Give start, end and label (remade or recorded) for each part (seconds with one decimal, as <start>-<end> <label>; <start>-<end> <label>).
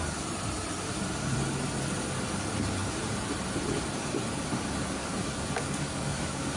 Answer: 0.0-5.0 recorded; 5.0-6.6 remade